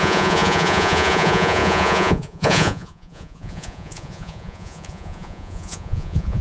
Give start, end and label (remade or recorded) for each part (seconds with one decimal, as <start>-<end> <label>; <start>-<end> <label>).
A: 0.0-6.4 remade